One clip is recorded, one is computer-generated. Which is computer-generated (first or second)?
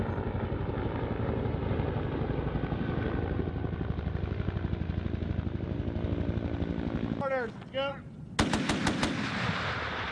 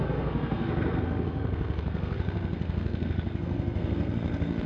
second